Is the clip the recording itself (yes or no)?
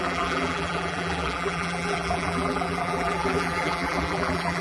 no